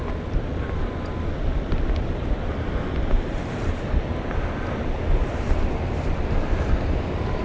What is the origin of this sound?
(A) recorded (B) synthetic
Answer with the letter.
A